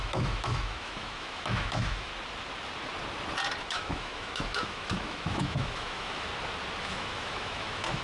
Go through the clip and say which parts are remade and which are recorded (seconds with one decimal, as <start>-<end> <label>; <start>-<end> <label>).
0.0-2.1 remade; 2.1-3.6 recorded; 3.6-6.3 remade; 6.3-6.8 recorded; 6.8-8.0 remade